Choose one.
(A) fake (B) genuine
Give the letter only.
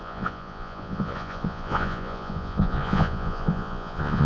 A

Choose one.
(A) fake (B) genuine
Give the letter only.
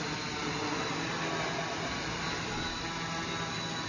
B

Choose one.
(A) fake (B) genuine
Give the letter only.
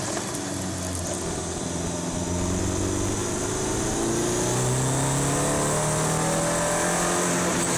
B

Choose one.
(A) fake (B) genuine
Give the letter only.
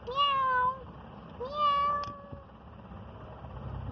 B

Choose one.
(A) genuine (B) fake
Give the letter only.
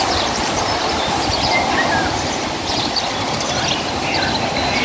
A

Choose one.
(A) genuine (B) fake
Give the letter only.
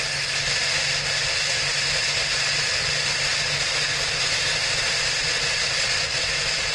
A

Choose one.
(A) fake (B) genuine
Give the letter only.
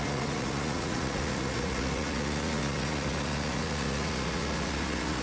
A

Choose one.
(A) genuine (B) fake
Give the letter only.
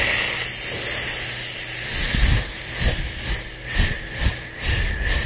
A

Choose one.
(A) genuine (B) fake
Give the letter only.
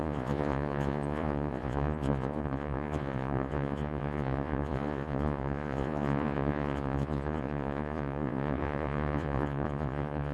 B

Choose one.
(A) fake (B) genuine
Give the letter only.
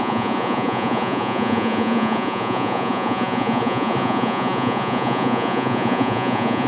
A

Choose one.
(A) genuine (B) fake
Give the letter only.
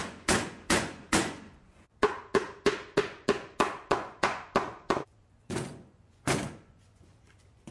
B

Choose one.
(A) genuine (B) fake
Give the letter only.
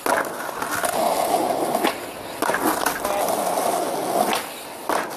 A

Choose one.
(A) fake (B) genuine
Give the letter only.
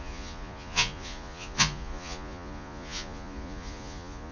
A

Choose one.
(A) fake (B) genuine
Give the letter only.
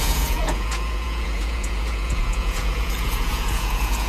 A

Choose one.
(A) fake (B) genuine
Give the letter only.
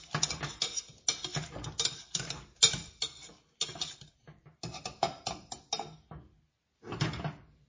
B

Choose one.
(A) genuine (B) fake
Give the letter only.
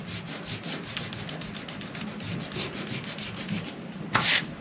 A